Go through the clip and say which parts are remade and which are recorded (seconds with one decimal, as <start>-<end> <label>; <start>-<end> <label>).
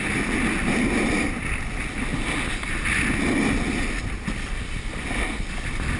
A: 0.0-6.0 recorded